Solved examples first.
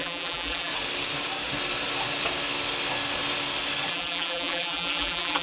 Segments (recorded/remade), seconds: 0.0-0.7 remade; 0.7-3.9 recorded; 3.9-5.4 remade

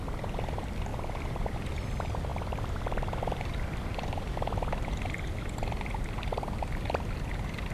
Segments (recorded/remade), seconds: 0.0-0.9 recorded; 0.9-1.7 remade; 1.7-2.3 recorded; 2.3-5.4 remade; 5.4-7.7 recorded

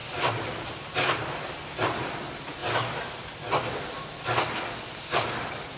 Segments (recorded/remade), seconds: 0.0-1.5 remade; 1.5-2.6 recorded; 2.6-3.1 remade; 3.1-5.8 recorded

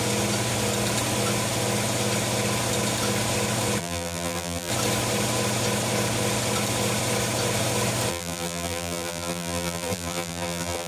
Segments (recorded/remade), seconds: 0.0-3.8 recorded; 3.8-4.7 remade; 4.7-8.1 recorded; 8.1-10.9 remade

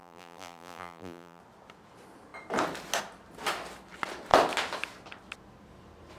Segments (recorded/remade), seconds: 0.0-1.4 remade; 1.4-6.2 recorded

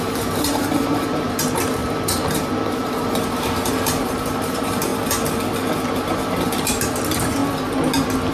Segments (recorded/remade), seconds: 0.0-4.9 remade; 4.9-5.9 recorded; 5.9-7.4 remade; 7.4-8.3 recorded

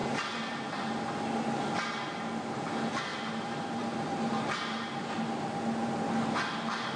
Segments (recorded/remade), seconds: 0.0-1.2 remade; 1.2-3.1 recorded; 3.1-5.2 remade; 5.2-7.0 recorded

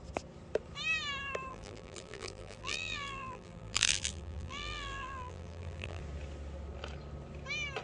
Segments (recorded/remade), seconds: 0.0-1.5 recorded; 1.5-6.0 remade; 6.0-7.8 recorded